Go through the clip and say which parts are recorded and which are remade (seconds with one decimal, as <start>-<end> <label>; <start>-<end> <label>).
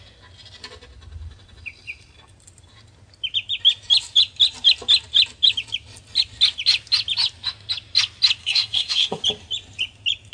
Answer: 0.0-8.4 recorded; 8.4-9.2 remade; 9.2-10.3 recorded